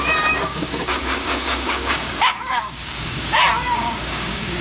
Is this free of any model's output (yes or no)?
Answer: no